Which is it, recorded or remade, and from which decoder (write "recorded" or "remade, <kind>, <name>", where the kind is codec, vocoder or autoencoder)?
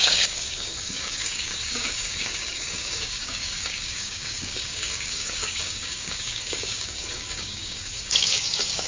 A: remade, codec, DAC